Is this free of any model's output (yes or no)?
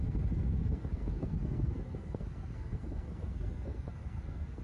no